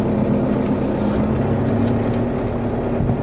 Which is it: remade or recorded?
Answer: recorded